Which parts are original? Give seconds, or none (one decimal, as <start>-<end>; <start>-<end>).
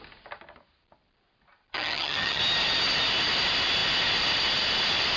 0.0-1.7; 2.4-5.2